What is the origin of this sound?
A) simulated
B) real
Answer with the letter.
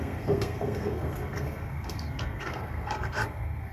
A